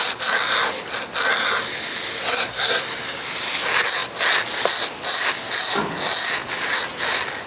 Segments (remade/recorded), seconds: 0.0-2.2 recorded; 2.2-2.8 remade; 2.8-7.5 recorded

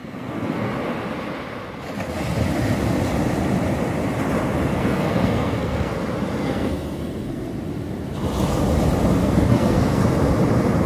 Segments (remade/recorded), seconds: 0.0-0.7 remade; 0.7-4.7 recorded; 4.7-5.9 remade; 5.9-6.4 recorded; 6.4-7.5 remade; 7.5-9.2 recorded; 9.2-10.0 remade; 10.0-10.9 recorded

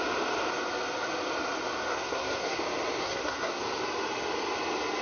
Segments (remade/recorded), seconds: 0.0-1.9 recorded; 1.9-2.6 remade; 2.6-3.0 recorded; 3.0-3.6 remade; 3.6-5.0 recorded